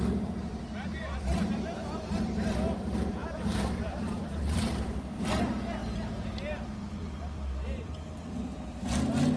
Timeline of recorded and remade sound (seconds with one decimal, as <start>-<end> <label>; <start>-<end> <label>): 0.0-1.0 recorded; 1.0-2.1 remade; 2.1-3.2 recorded; 3.2-5.3 remade; 5.3-5.8 recorded; 5.8-7.9 remade; 7.9-9.4 recorded